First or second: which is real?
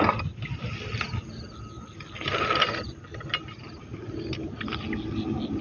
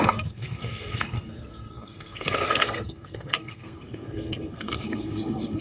first